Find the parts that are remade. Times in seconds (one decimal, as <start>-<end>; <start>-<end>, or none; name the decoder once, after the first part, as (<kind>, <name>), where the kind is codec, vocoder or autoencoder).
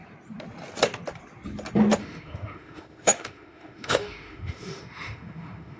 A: 2.0-5.8 (autoencoder, DAC-VAE)